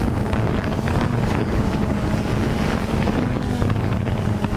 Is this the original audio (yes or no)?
no